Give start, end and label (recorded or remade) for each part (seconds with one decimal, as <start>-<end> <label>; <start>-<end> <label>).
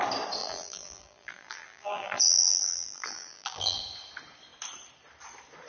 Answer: 0.0-0.4 recorded; 0.4-3.8 remade; 3.8-5.7 recorded